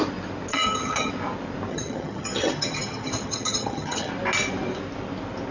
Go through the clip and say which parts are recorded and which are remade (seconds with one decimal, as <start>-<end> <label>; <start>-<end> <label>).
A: 0.0-0.5 recorded; 0.5-1.1 remade; 1.1-1.7 recorded; 1.7-4.1 remade; 4.1-5.5 recorded